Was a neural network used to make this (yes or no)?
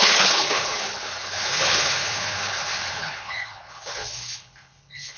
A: yes